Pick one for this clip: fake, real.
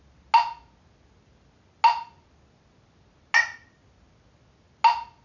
real